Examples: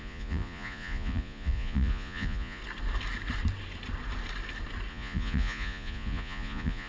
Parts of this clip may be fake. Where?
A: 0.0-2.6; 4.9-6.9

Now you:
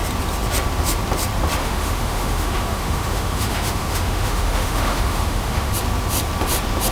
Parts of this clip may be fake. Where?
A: 1.6-5.7

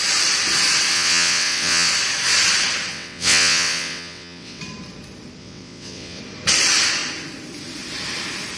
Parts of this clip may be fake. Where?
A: 0.9-1.9; 2.9-4.6; 5.4-6.2

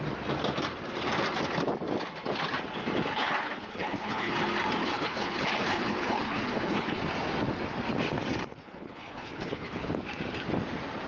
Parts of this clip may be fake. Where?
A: 3.1-4.3; 4.8-7.0; 8.4-9.9